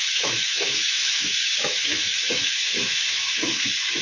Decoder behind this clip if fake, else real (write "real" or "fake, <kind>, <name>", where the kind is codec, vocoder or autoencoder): fake, autoencoder, DAC-VAE